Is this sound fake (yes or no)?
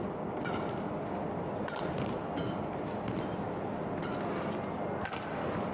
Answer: no